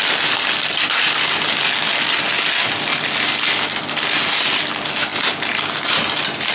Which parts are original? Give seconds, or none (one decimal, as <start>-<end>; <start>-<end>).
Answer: 0.0-6.5